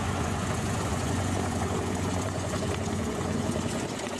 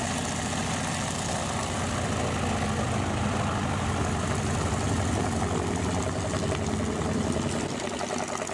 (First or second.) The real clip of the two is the second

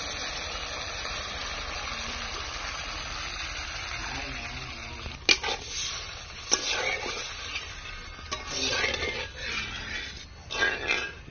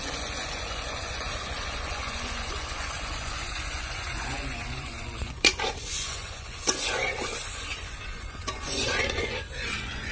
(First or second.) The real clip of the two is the first